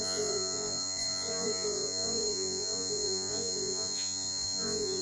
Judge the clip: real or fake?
fake